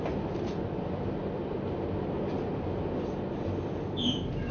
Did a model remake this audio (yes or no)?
no